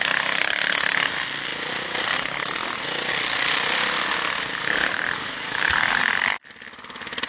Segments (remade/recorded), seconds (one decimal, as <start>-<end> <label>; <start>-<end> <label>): 0.0-4.6 recorded; 4.6-6.1 remade; 6.1-7.3 recorded